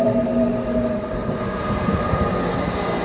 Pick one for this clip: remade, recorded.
recorded